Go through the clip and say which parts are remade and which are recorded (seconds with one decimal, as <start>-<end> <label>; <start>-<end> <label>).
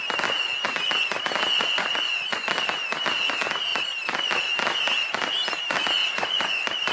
0.0-1.5 recorded; 1.5-2.5 remade; 2.5-6.0 recorded; 6.0-6.9 remade